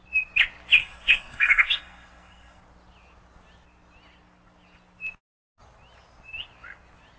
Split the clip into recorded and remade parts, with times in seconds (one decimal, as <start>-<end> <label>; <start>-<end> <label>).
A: 0.0-0.8 recorded; 0.8-2.6 remade; 2.6-7.2 recorded